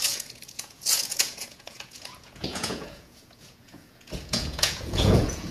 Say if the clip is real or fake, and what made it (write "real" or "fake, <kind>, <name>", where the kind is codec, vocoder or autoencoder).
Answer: fake, vocoder, Vocos